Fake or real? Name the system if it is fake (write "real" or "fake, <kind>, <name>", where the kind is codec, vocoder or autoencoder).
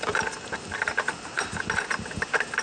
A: real